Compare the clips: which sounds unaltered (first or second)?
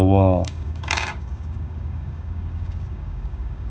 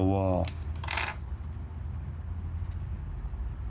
second